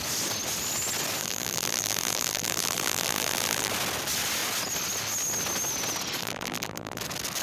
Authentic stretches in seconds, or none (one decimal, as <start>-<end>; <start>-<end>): 0.0-1.2; 3.7-6.2; 7.0-7.4